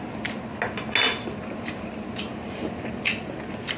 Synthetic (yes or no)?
no